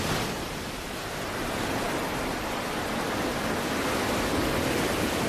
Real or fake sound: real